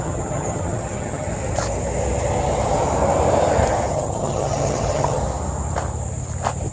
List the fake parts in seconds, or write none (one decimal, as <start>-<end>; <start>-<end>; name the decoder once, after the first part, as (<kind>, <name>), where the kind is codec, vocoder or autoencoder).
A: 0.0-1.3 (vocoder, HiFi-GAN); 3.9-5.2